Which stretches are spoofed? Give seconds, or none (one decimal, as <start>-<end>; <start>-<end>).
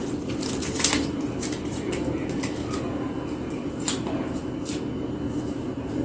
none